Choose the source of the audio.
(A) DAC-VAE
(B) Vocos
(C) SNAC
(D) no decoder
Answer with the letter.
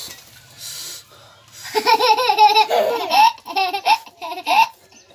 D